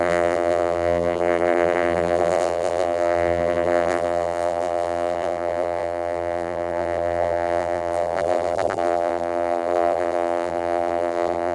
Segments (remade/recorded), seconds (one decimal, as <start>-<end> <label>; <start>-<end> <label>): 0.0-11.5 remade